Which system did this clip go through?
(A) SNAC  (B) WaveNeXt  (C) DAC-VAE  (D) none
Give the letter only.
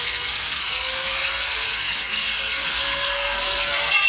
A